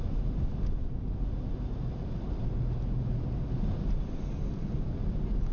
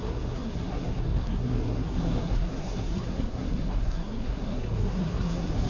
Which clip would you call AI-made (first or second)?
second